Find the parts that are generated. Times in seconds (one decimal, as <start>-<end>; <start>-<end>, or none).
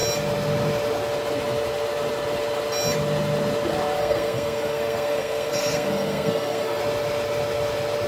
4.0-6.8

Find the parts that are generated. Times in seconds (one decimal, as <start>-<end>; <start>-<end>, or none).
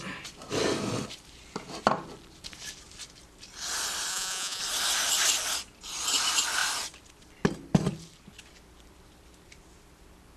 4.1-4.6